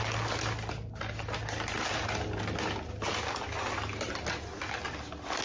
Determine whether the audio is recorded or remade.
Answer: recorded